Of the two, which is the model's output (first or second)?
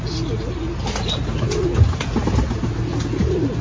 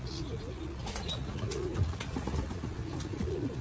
second